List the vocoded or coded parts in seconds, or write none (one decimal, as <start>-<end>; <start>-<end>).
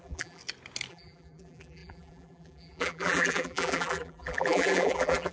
0.0-0.4; 0.9-5.3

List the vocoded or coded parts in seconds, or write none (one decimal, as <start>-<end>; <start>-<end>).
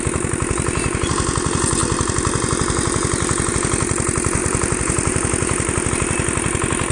4.4-5.9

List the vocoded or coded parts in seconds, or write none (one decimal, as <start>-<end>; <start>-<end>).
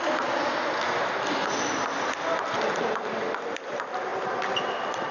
none